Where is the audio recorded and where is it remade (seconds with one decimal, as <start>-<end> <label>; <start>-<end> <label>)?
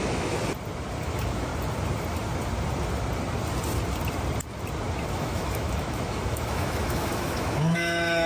0.0-0.4 remade; 0.4-1.0 recorded; 1.0-1.5 remade; 1.5-5.1 recorded; 5.1-8.3 remade